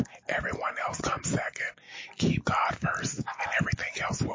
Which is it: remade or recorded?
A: recorded